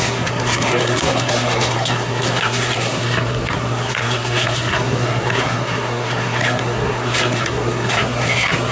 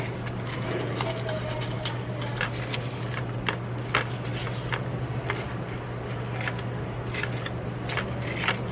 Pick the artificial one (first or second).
first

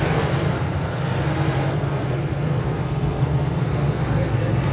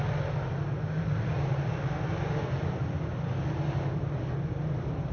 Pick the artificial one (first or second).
first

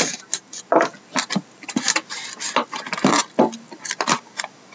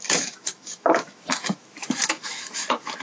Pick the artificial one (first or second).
second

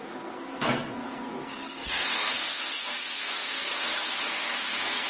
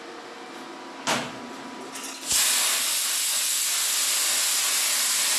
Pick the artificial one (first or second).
first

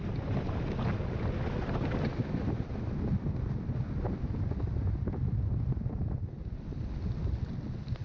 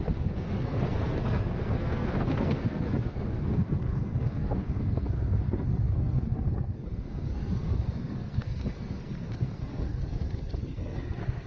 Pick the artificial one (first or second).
second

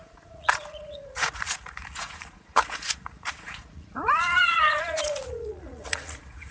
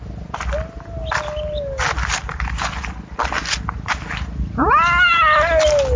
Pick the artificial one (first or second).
first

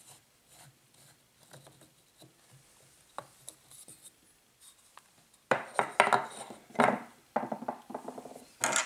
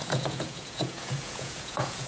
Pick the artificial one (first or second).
second